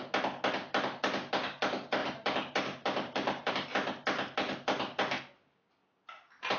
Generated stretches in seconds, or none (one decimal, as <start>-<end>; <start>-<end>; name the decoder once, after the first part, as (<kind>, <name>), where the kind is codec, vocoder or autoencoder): 2.0-3.5 (vocoder, BigVGAN v2)